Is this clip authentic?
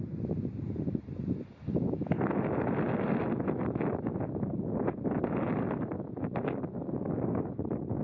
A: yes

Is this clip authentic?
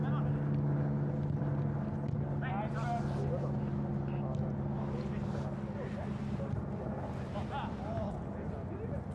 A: yes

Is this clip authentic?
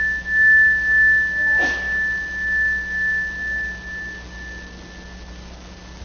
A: yes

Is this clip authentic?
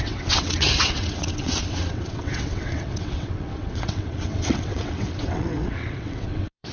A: no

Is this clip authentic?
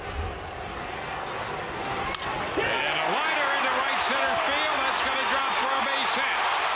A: yes